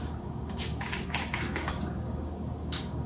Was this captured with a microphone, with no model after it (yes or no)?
no